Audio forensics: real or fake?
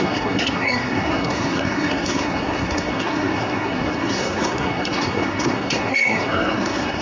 fake